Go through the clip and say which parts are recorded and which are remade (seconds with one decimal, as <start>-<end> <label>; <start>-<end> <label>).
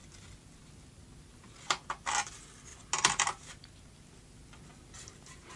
0.0-5.6 recorded